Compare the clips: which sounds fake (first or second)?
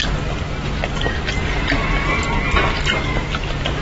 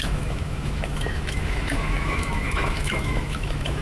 second